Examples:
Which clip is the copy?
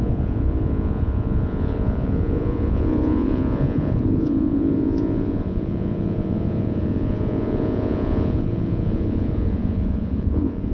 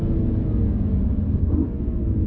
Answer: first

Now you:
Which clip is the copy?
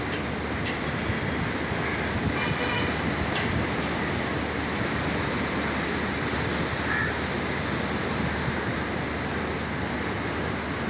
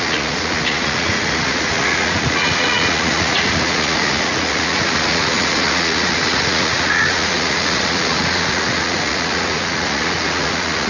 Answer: second